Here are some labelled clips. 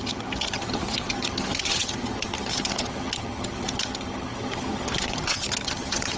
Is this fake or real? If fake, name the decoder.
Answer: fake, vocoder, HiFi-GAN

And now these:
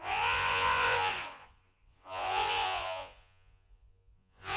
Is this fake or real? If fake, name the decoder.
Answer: fake, vocoder, Vocos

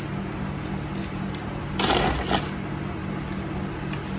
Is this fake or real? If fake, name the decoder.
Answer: real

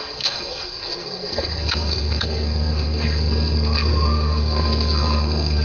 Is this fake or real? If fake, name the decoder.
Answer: fake, codec, SNAC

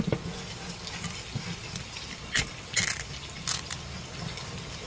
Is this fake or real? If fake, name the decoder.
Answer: real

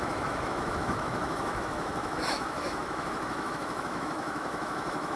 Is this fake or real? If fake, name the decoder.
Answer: fake, autoencoder, DAC-VAE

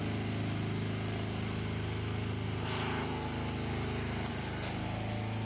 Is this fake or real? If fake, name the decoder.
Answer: real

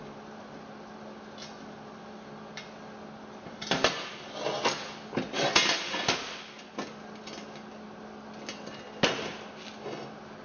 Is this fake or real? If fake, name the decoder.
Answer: real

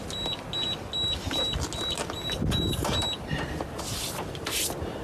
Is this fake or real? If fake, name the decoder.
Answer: real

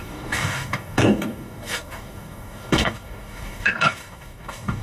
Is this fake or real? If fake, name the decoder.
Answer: fake, codec, DAC